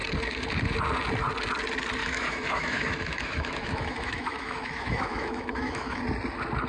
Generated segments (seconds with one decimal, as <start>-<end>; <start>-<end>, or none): 2.0-6.0